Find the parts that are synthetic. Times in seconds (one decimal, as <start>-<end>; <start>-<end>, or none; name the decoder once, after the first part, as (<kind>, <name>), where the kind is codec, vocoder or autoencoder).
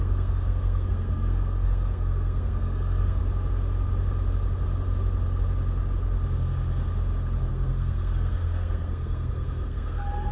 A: 0.0-3.2 (codec, SNAC); 7.5-10.3